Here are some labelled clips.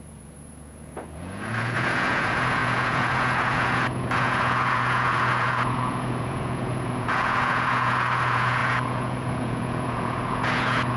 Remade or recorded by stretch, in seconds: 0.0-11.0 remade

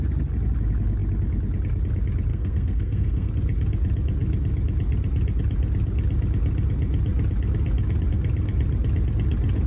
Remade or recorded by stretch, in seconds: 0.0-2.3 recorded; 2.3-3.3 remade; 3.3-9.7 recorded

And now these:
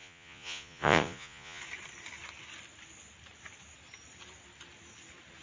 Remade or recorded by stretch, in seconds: 0.0-1.6 remade; 1.6-5.4 recorded

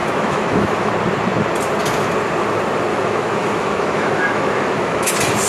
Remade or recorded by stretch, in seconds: 0.0-0.9 remade; 0.9-2.9 recorded; 2.9-5.1 remade; 5.1-5.5 recorded